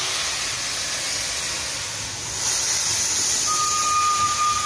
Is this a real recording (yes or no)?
yes